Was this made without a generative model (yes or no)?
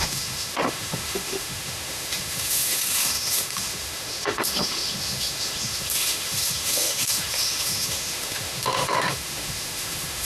no